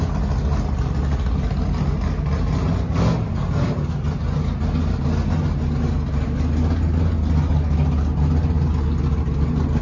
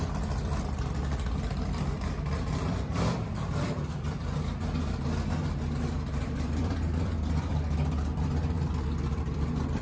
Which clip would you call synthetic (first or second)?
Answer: second